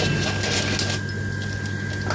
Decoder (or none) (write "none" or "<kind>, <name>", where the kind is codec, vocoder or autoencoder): none